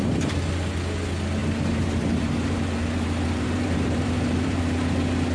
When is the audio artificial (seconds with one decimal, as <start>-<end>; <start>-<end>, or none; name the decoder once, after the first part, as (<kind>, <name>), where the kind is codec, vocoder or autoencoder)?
1.4-4.6 (vocoder, BigVGAN v2)